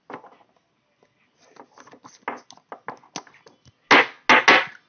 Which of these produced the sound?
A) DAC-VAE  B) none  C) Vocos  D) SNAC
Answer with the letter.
B